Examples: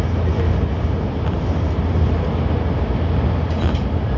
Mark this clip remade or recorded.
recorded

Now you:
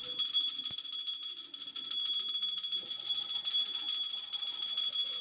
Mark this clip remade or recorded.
recorded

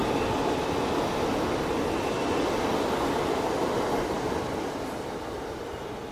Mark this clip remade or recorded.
recorded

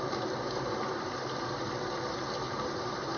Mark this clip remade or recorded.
recorded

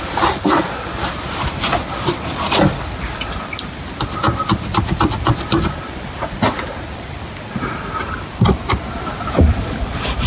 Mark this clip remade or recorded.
recorded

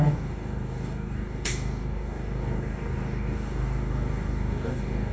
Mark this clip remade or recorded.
remade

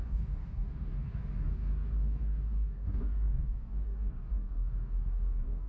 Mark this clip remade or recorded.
remade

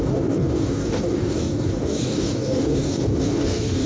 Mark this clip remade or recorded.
remade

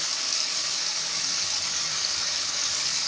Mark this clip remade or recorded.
remade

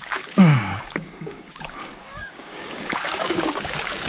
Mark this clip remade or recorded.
remade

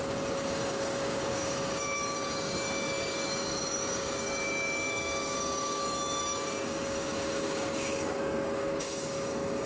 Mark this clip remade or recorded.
remade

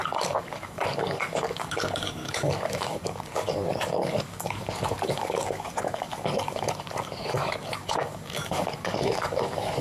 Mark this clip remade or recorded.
remade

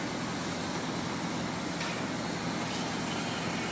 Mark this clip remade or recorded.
recorded